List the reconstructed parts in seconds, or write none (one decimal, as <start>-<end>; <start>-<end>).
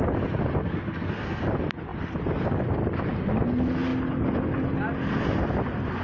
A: 0.6-1.4